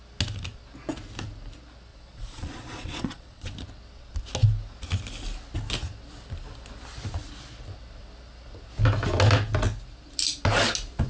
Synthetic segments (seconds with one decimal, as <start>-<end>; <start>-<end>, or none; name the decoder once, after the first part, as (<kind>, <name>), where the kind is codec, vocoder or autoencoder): 1.9-3.5 (vocoder, Vocos)